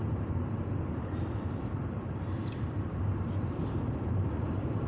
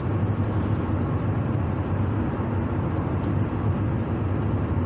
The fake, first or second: first